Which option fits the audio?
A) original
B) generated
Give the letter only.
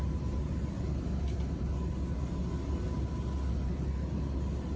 A